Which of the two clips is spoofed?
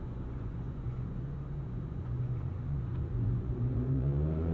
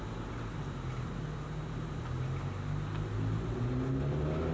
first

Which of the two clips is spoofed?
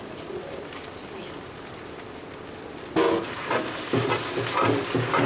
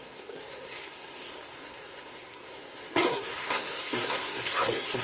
second